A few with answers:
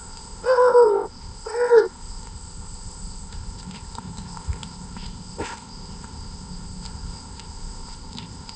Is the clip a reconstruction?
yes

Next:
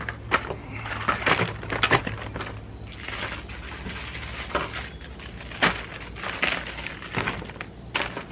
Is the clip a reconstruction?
no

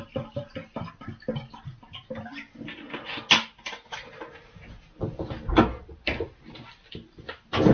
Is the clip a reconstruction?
no